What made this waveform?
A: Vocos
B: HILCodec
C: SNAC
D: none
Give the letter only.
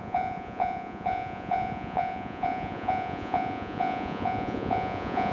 A